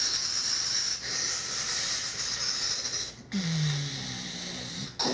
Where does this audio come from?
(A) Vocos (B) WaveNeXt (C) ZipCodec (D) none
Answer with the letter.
D